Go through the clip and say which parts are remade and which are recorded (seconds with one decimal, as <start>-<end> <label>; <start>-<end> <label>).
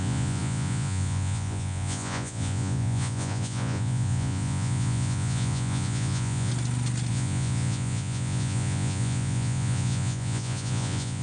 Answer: 0.0-6.5 remade; 6.5-7.1 recorded; 7.1-11.2 remade